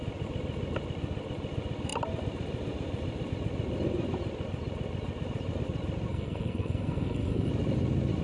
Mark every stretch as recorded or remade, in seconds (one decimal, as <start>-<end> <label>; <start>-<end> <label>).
0.0-6.1 recorded; 6.1-7.5 remade; 7.5-8.2 recorded